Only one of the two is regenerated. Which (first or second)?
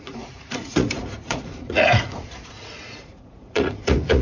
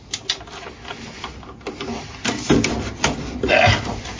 first